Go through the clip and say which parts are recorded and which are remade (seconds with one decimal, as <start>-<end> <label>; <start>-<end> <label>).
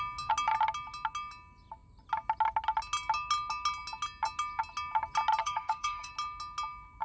0.0-5.4 recorded; 5.4-6.1 remade; 6.1-7.0 recorded